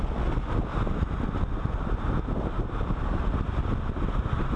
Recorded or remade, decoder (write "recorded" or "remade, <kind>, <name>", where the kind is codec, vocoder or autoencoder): recorded